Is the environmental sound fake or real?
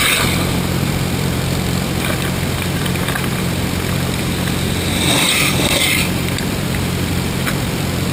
fake